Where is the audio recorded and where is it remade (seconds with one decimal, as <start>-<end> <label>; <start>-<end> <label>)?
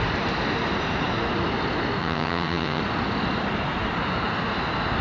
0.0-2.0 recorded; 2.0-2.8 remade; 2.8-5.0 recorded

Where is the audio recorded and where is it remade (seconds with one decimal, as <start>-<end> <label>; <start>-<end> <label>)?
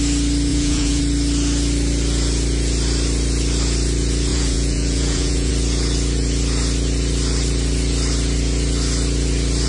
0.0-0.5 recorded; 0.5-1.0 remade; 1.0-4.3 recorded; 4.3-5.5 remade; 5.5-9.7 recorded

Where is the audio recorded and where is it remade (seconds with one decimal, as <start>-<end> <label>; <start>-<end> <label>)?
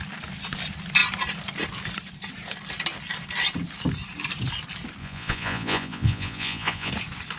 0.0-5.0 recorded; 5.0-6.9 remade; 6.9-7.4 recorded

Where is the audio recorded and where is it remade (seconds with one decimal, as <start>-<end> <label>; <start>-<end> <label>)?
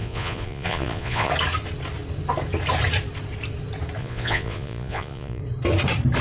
0.0-1.3 remade; 1.3-4.0 recorded; 4.0-5.4 remade; 5.4-6.2 recorded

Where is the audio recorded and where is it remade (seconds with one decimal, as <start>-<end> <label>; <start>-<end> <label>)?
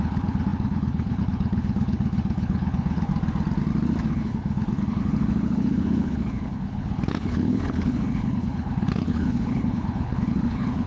0.0-3.1 remade; 3.1-4.1 recorded; 4.1-10.9 remade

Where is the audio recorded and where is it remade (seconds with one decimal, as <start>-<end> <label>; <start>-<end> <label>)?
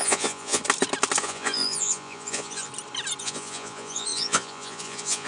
0.0-0.6 remade; 0.6-1.2 recorded; 1.2-2.7 remade; 2.7-3.2 recorded; 3.2-5.3 remade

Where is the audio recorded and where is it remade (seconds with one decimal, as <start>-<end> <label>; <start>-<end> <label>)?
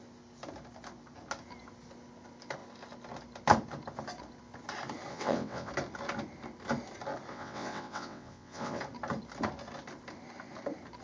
0.0-5.1 recorded; 5.1-5.7 remade; 5.7-7.3 recorded; 7.3-8.8 remade; 8.8-11.0 recorded